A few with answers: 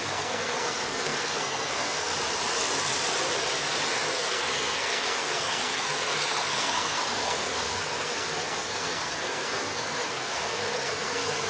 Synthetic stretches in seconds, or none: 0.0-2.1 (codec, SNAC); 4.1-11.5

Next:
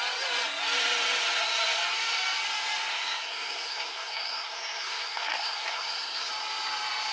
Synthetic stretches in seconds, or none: 2.9-6.3 (codec, SNAC)

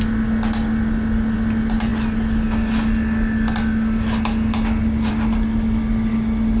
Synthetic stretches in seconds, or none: none

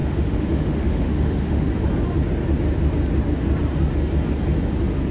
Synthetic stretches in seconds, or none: 0.0-1.7 (autoencoder, DAC-VAE)

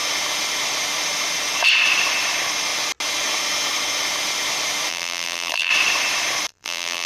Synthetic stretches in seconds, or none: 4.9-5.7 (vocoder, BigVGAN v2); 6.5-7.1